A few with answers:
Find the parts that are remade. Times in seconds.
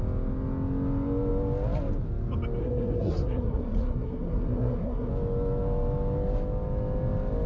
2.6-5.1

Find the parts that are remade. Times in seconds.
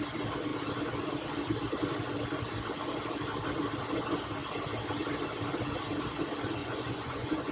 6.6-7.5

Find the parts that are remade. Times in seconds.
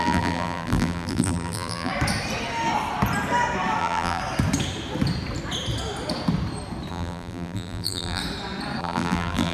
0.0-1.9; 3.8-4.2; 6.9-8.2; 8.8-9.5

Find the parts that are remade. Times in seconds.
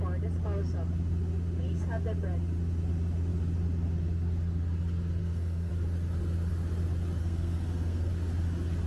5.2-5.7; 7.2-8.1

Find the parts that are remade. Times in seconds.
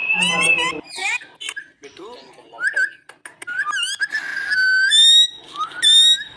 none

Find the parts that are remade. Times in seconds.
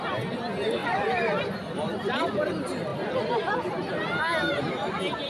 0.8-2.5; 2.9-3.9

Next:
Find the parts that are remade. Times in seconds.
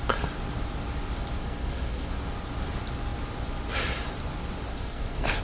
1.4-2.1; 4.7-5.4